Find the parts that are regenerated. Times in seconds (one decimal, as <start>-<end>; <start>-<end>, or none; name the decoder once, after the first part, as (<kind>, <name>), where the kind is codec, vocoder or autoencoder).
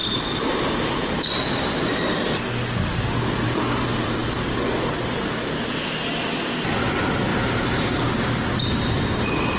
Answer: 0.0-1.9 (vocoder, BigVGAN v2); 7.3-8.0